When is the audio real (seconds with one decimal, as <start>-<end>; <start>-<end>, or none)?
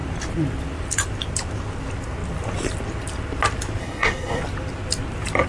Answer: 0.0-3.8; 4.4-5.5